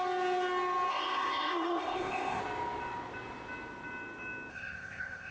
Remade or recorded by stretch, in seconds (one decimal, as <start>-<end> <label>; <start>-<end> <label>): 0.0-0.9 recorded; 0.9-2.4 remade; 2.4-4.5 recorded; 4.5-5.3 remade